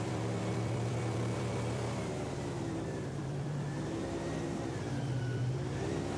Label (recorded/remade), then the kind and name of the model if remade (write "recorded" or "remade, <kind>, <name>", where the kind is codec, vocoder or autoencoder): remade, vocoder, BigVGAN v2